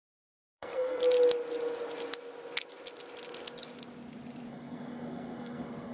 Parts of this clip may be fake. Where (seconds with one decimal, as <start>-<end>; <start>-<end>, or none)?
0.0-1.0; 4.5-5.9